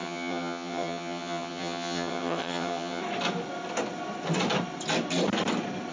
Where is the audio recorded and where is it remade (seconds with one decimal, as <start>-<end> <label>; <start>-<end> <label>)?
0.0-3.0 remade; 3.0-5.9 recorded